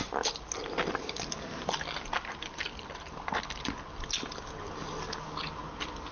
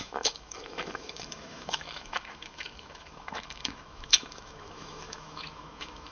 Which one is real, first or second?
first